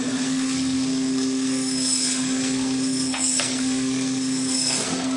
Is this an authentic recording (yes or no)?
no